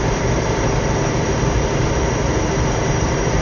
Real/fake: fake